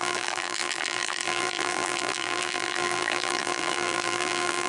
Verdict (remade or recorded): remade